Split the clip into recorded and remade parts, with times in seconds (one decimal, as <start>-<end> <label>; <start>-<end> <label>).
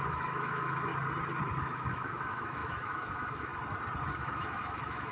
0.0-0.9 remade; 0.9-1.6 recorded; 1.6-3.5 remade; 3.5-4.0 recorded; 4.0-5.1 remade